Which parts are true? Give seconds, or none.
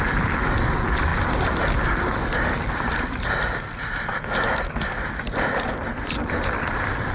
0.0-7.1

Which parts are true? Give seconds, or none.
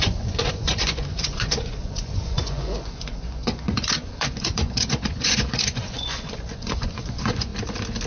7.5-8.1